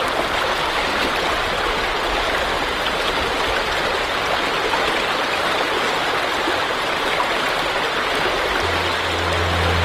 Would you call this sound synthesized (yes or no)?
no